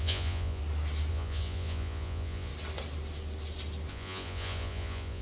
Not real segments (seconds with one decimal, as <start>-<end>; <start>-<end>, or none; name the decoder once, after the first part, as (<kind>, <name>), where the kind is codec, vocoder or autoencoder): 0.0-0.6 (vocoder, Vocos); 1.1-2.5; 3.9-5.2